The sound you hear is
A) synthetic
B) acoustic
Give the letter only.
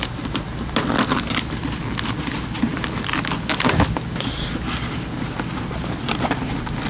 B